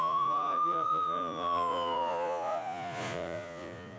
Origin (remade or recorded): remade